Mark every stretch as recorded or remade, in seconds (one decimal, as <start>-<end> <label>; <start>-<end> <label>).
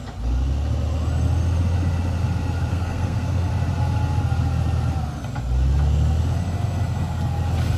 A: 0.0-2.7 recorded; 2.7-3.5 remade; 3.5-7.8 recorded